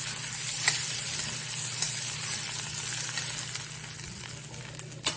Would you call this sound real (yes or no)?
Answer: yes